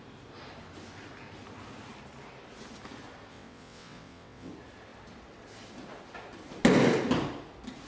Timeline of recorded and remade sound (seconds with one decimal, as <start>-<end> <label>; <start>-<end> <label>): 0.0-3.3 recorded; 3.3-4.5 remade; 4.5-7.9 recorded